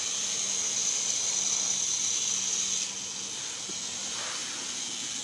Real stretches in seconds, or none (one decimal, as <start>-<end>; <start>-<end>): 0.0-5.2